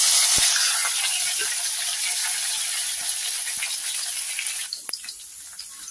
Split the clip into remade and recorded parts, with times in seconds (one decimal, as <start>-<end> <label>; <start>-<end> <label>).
0.0-5.9 recorded